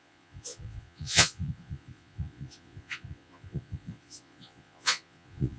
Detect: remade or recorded remade